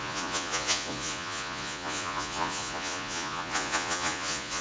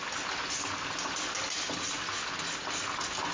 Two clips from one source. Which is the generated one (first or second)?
first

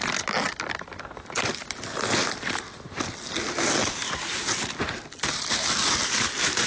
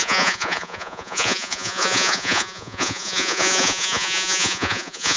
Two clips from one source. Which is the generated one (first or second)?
second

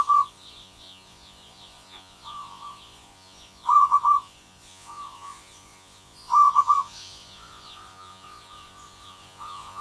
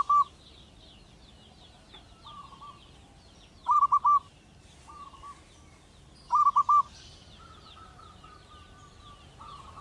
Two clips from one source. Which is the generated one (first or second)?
first